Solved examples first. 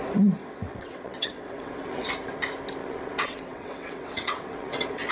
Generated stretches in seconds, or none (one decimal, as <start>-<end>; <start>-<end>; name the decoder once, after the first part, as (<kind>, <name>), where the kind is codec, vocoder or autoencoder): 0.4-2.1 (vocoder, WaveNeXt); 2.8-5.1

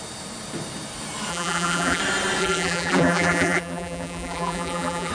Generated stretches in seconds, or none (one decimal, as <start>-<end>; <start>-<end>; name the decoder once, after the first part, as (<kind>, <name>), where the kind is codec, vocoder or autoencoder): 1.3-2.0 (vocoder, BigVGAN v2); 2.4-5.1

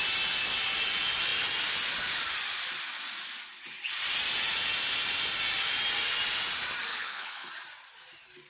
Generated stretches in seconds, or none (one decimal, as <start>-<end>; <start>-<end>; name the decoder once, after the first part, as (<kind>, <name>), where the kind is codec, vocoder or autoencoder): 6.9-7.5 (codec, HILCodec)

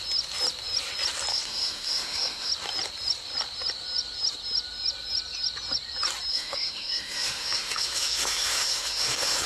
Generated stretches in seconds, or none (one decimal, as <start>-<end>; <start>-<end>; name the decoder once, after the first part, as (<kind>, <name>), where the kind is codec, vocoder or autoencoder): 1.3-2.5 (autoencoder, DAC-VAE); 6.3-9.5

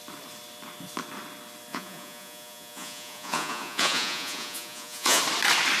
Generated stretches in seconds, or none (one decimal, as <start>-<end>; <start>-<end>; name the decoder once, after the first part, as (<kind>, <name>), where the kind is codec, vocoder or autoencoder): 1.7-5.2 (vocoder, Vocos)

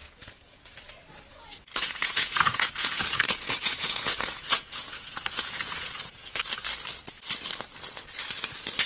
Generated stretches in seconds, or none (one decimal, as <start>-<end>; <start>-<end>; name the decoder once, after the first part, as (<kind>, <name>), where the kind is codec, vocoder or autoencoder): 0.0-0.7 (vocoder, Vocos); 1.3-6.4

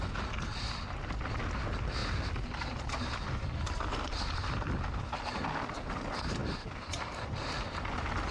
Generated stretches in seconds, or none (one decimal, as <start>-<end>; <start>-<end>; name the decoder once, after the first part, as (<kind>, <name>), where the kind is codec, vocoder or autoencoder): 2.0-5.2 (vocoder, BigVGAN v2); 6.4-8.3